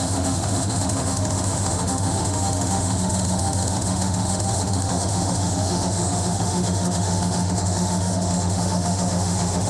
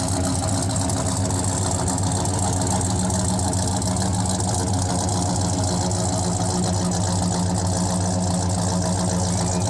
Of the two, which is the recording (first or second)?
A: second